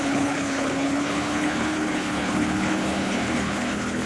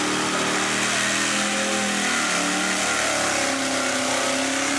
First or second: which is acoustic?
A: second